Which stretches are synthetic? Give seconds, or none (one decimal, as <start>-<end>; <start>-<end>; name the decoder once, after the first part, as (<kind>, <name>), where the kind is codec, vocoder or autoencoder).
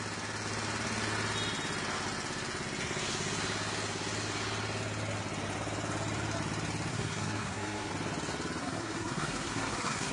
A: 6.9-7.9 (codec, SNAC); 8.6-10.1